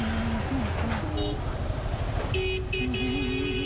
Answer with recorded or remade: recorded